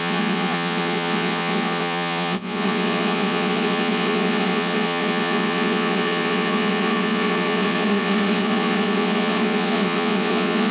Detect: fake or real fake